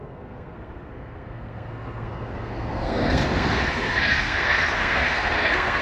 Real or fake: fake